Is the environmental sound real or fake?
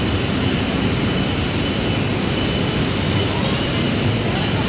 real